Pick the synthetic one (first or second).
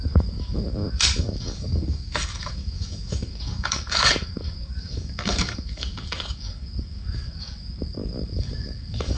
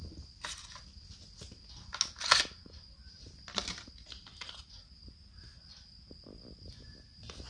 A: first